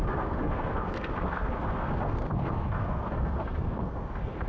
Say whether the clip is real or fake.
fake